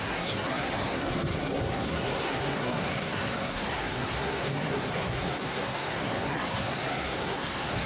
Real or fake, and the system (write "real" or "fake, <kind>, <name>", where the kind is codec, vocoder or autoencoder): fake, codec, SNAC